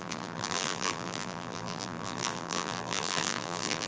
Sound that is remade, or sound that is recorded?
remade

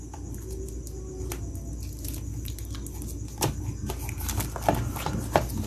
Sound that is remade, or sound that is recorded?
recorded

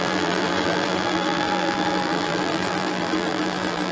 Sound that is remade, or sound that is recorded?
remade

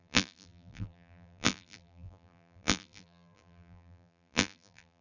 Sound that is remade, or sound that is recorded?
remade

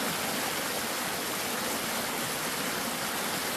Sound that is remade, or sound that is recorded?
recorded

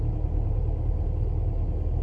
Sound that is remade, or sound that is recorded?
recorded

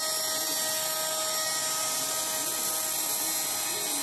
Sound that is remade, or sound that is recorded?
recorded